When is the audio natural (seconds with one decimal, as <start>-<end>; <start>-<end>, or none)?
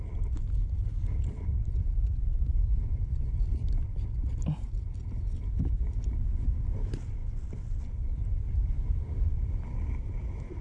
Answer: 0.0-10.6